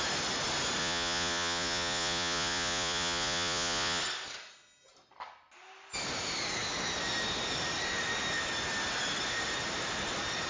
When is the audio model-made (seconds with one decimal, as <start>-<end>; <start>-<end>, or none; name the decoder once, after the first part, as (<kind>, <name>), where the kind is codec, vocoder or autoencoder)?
0.8-4.0 (vocoder, Vocos)